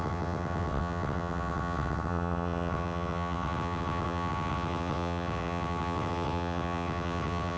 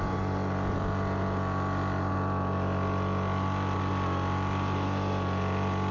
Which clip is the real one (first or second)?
second